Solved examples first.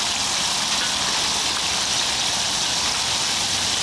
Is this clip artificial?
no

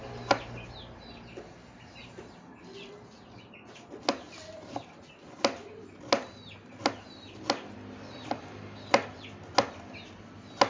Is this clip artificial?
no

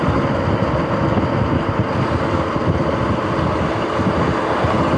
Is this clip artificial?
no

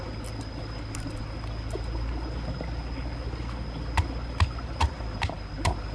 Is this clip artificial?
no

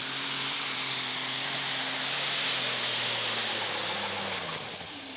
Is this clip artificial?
no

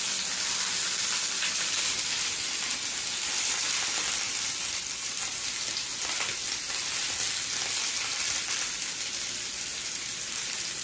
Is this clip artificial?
no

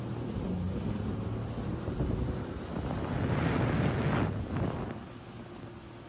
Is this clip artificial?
no